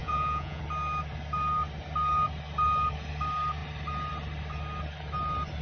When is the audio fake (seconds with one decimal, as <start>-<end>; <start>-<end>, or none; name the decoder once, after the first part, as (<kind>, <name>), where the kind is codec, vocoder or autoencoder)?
0.0-0.6 (vocoder, Vocos)